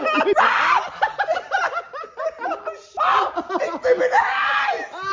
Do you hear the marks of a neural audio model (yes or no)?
no